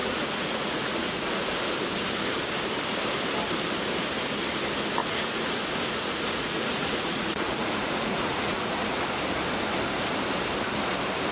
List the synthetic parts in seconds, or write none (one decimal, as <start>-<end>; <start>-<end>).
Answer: 0.0-1.5; 5.0-8.8